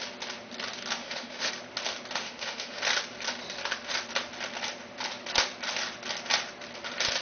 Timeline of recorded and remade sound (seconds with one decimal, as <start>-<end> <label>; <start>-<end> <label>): 0.0-1.0 recorded; 1.0-1.5 remade; 1.5-2.2 recorded; 2.2-2.8 remade; 2.8-7.2 recorded